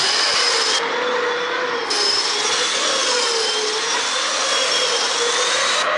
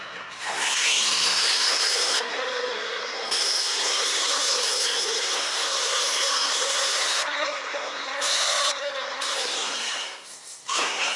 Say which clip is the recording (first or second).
first